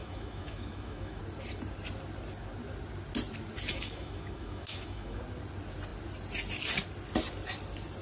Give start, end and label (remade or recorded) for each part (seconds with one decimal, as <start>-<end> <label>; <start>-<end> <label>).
0.0-1.2 remade; 1.2-3.7 recorded; 3.7-5.2 remade; 5.2-8.0 recorded